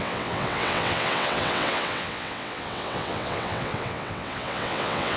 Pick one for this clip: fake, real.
fake